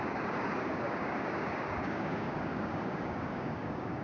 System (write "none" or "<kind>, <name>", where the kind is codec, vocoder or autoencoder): codec, DAC